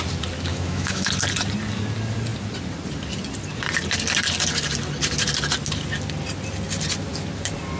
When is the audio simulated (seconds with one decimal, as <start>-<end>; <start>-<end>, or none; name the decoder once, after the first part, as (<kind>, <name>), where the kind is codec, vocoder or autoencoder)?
0.5-1.1 (autoencoder, DAC-VAE)